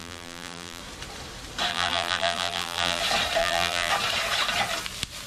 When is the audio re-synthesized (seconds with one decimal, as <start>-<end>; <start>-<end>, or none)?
0.0-0.8; 1.7-3.0; 3.4-3.9